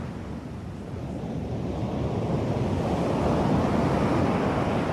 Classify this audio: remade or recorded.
recorded